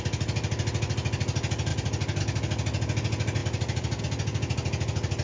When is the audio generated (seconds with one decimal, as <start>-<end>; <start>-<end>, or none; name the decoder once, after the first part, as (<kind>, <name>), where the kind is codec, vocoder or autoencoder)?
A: 1.7-2.2 (vocoder, BigVGAN v2); 3.4-4.0